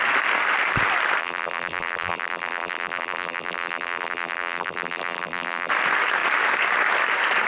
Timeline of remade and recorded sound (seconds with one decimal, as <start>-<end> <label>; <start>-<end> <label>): 0.0-1.2 recorded; 1.2-5.7 remade; 5.7-7.5 recorded